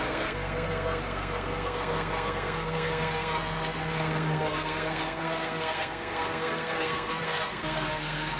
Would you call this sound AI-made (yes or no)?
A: yes